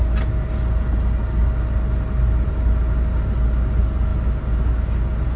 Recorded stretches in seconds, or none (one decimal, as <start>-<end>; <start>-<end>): 0.0-5.4

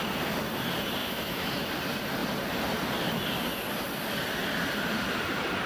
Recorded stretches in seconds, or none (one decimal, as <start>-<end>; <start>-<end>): 0.0-1.0; 1.7-5.7